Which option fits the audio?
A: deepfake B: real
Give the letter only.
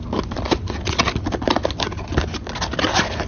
B